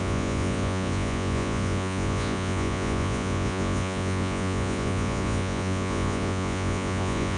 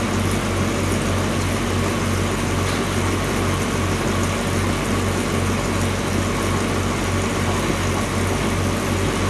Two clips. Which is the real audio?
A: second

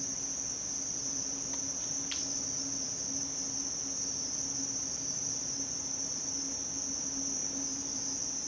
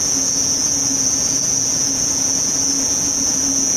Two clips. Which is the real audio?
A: first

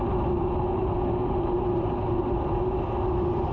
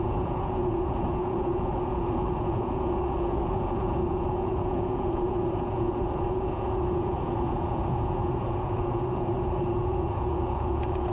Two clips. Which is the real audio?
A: first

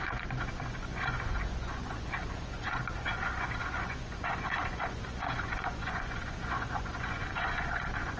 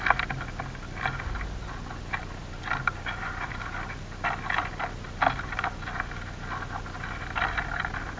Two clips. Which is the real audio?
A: second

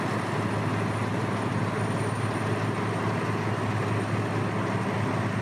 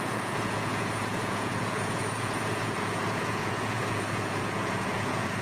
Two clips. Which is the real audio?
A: first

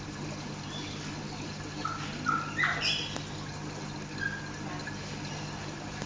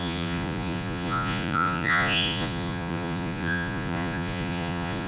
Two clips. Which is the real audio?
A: first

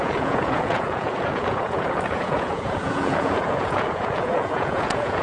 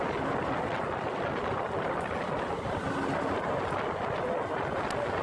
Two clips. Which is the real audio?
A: second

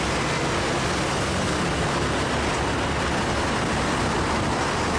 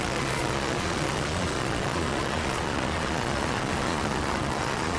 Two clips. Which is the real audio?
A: first